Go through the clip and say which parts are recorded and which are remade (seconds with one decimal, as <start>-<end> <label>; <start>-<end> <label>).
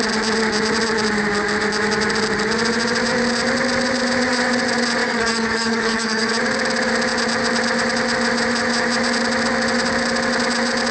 0.0-5.0 recorded; 5.0-6.3 remade; 6.3-10.9 recorded